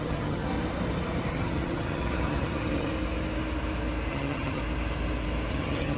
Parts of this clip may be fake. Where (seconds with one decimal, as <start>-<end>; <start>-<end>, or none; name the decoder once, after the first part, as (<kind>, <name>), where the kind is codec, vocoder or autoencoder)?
0.0-0.5 (vocoder, HiFi-GAN); 1.3-2.9; 4.1-4.6; 5.5-6.0